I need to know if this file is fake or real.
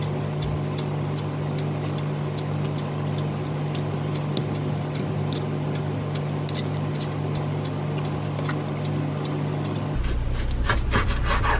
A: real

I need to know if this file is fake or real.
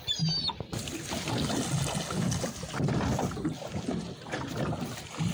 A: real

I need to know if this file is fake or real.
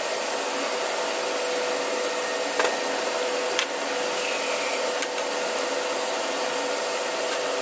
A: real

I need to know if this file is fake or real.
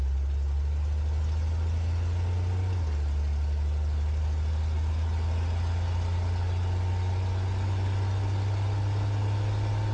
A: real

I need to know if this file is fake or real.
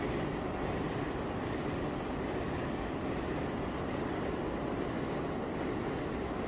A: real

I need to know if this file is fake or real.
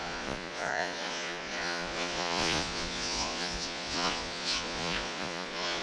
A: fake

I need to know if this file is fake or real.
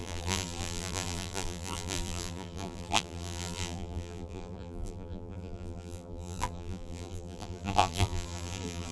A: fake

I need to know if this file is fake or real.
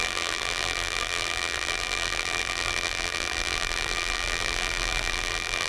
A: fake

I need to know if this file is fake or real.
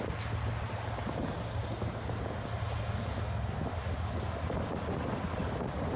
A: real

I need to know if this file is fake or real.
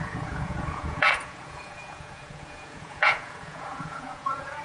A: fake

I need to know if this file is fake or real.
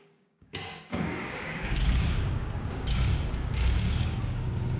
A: fake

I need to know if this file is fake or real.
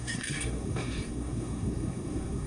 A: fake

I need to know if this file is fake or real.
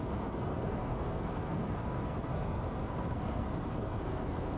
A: fake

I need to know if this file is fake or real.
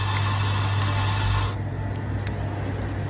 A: real